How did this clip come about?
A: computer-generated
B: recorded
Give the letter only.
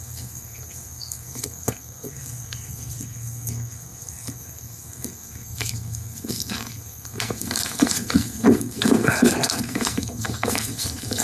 A